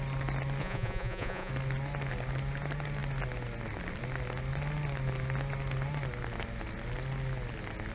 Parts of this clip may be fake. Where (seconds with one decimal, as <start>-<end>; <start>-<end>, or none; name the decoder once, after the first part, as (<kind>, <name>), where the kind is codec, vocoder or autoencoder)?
0.6-1.5 (vocoder, Vocos)